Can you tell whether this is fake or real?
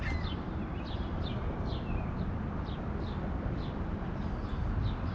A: real